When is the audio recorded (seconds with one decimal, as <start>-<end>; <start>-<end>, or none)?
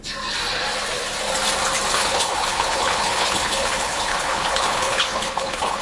0.0-1.9